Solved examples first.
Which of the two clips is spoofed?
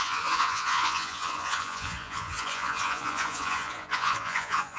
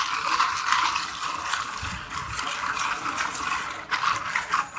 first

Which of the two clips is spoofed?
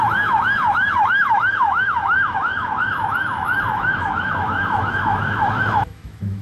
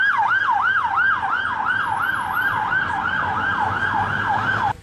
first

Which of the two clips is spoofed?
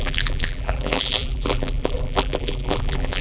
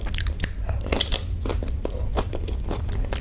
first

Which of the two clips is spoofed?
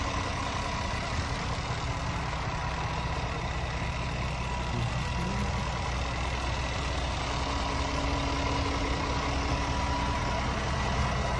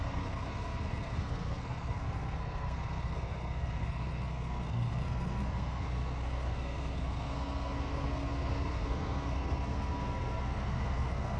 second